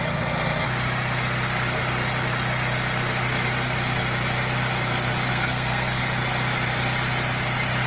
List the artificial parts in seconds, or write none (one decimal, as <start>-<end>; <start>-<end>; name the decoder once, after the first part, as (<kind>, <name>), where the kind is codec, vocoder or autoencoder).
5.3-6.0 (codec, SNAC)

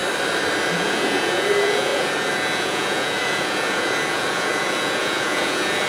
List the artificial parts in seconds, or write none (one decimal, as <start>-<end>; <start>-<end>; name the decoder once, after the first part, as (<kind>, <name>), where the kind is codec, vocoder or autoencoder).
0.7-5.9 (vocoder, Vocos)

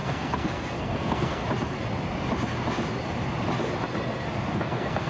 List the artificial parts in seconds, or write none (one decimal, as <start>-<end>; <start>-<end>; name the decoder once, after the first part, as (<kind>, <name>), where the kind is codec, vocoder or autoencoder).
0.0-1.4 (codec, SNAC); 4.5-5.1

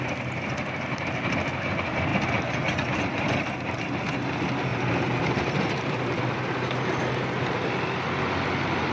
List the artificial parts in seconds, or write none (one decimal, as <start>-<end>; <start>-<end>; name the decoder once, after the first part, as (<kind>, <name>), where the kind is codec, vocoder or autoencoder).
4.7-5.7 (vocoder, BigVGAN v2)

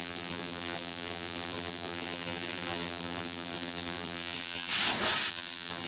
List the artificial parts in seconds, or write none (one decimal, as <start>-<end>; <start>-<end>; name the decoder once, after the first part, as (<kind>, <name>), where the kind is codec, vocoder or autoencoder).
0.0-4.7 (vocoder, BigVGAN v2); 5.3-5.9